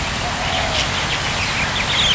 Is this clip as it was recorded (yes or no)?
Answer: yes